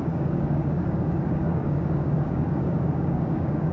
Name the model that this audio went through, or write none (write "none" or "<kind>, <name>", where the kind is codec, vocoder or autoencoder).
codec, DAC